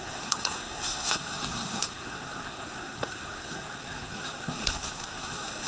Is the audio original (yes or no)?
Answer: no